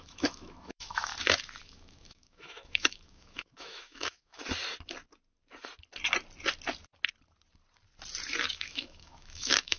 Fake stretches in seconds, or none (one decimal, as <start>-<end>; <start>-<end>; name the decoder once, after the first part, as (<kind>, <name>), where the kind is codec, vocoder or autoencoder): 0.0-1.1 (autoencoder, DAC-VAE); 1.6-4.4; 8.4-9.8